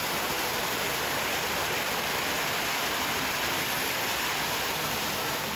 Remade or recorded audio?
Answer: recorded